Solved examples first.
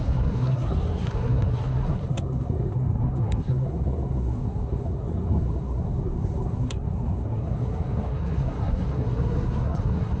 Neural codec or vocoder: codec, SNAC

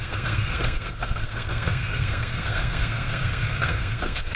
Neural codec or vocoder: codec, SNAC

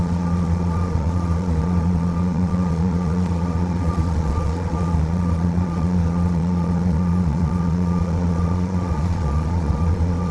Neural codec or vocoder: vocoder, Vocos